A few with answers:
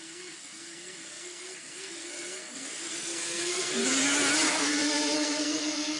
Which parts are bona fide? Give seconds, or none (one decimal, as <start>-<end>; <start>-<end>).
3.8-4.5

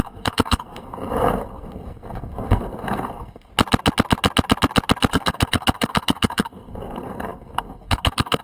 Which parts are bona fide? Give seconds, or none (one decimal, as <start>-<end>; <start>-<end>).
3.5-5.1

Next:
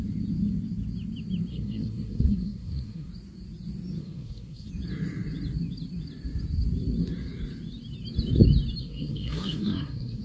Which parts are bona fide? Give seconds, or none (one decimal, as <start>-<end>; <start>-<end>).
0.0-1.5; 3.1-4.0; 4.7-8.8

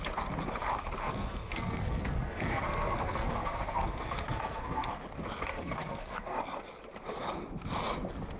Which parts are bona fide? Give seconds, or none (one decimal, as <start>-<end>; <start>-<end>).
0.0-1.0; 4.9-5.5; 6.4-8.4

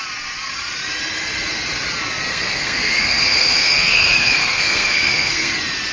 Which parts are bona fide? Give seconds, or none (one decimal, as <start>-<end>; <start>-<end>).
0.0-2.3; 5.5-5.9

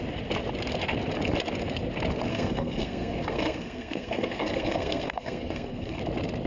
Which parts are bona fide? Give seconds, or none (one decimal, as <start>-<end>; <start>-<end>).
0.0-2.3; 6.0-6.5

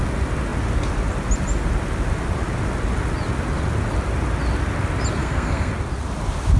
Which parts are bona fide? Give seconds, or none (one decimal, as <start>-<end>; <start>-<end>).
0.0-5.2; 5.7-6.6

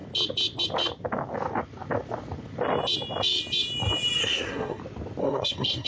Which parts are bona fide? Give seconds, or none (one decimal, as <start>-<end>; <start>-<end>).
0.0-4.2; 4.8-5.2